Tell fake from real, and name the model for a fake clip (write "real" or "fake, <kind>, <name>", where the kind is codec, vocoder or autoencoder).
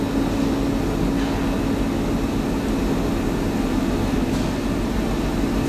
real